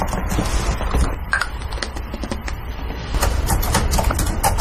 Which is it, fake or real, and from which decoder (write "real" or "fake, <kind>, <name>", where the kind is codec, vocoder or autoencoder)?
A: real